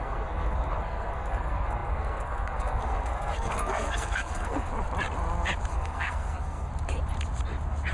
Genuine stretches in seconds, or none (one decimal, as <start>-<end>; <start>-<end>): 4.7-5.7; 6.7-7.9